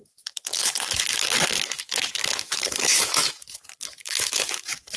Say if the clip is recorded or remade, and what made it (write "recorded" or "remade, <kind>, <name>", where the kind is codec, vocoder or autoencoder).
remade, autoencoder, DAC-VAE